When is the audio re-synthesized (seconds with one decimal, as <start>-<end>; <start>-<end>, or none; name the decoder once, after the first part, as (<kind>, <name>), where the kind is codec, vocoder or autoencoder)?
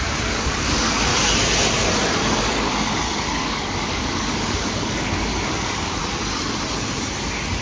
0.0-1.1 (codec, DAC); 2.4-6.0